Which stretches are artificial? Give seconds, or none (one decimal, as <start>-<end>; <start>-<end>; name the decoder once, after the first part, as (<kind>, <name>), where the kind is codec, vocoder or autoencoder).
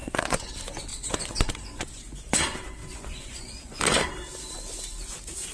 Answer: 0.0-0.5 (vocoder, Vocos); 0.9-2.4; 2.8-3.8